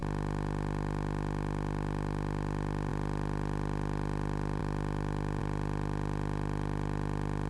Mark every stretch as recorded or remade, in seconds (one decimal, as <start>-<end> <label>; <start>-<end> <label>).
0.0-7.5 recorded

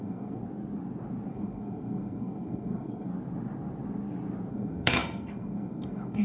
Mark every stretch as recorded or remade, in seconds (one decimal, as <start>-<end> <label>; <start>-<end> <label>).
0.0-0.4 remade; 0.4-1.3 recorded; 1.3-3.1 remade; 3.1-4.5 recorded; 4.5-6.2 remade

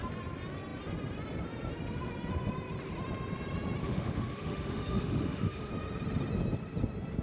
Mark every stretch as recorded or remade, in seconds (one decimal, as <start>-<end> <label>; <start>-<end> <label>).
0.0-3.8 recorded; 3.8-5.7 remade; 5.7-7.2 recorded

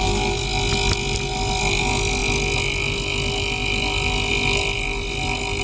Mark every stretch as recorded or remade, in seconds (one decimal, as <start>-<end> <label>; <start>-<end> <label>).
0.0-5.6 recorded

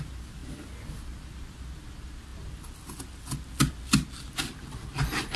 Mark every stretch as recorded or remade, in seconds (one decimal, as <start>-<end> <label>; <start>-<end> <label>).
0.0-5.4 recorded

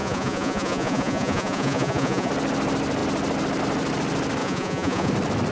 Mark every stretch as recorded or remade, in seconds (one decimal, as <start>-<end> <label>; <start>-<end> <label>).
0.0-2.3 remade; 2.3-4.4 recorded; 4.4-5.1 remade; 5.1-5.5 recorded